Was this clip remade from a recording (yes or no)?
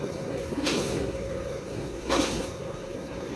yes